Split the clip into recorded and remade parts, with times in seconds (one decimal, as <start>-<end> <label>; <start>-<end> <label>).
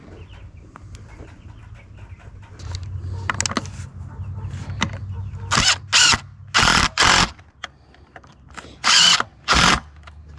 0.0-10.4 recorded